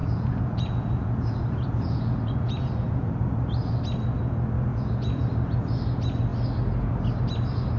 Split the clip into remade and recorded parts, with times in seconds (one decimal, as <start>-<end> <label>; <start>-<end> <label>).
0.0-3.1 remade; 3.1-4.7 recorded; 4.7-5.2 remade; 5.2-7.8 recorded